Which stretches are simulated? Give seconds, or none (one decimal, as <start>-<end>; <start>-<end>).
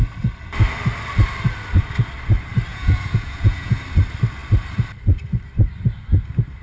2.7-3.8